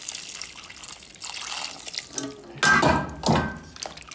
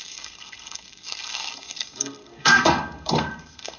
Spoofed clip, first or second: second